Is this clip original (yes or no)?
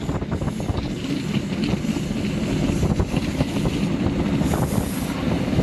yes